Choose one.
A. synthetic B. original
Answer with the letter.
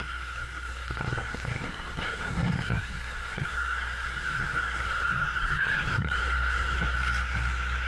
A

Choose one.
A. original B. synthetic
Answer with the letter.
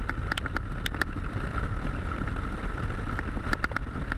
A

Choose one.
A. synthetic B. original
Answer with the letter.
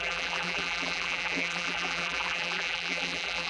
A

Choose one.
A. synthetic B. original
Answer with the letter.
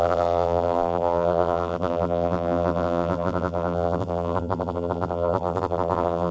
A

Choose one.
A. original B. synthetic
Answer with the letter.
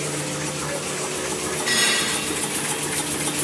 A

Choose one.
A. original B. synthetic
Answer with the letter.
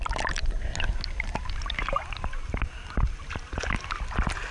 A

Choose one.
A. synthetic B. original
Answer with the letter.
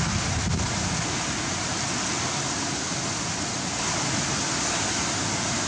B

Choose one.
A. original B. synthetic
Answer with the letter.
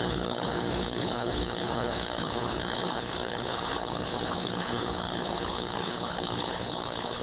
B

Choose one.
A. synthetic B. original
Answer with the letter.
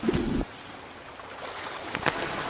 B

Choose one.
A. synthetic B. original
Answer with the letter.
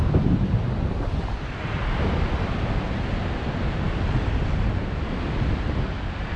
B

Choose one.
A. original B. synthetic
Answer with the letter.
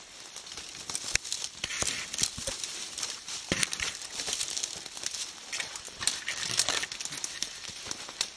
A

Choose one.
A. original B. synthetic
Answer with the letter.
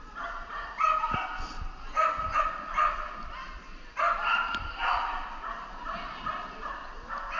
A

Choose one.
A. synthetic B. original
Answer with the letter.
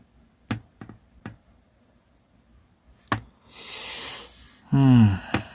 B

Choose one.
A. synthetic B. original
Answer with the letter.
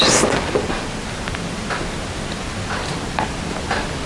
B